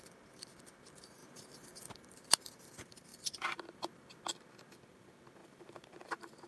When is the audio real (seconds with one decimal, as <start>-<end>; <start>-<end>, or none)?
0.0-3.1; 4.1-5.4